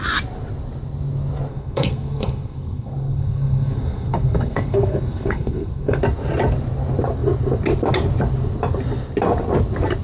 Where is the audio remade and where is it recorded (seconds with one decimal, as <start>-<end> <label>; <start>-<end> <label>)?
0.0-1.5 recorded; 1.5-6.0 remade; 6.0-10.0 recorded